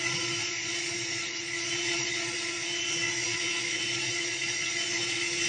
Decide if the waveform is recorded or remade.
remade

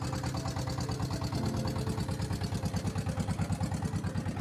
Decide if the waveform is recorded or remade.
recorded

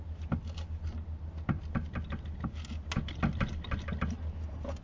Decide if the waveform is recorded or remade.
recorded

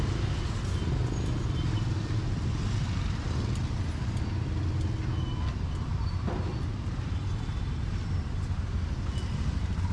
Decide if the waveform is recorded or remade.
recorded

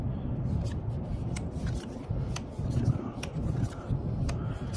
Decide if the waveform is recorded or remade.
recorded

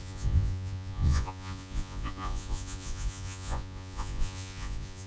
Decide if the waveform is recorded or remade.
remade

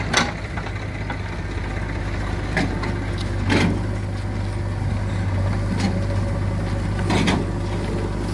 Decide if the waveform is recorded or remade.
recorded